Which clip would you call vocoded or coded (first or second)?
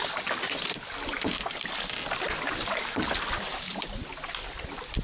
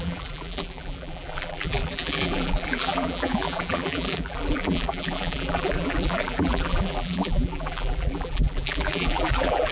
second